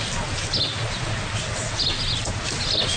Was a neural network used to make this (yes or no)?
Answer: no